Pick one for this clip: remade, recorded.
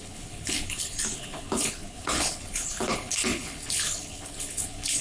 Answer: remade